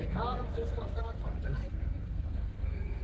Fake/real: fake